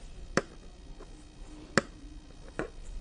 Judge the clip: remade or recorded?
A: recorded